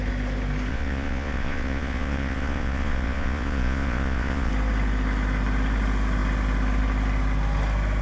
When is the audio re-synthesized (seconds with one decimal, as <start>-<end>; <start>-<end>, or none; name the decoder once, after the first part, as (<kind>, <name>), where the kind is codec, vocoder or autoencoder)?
0.7-4.5 (vocoder, Vocos)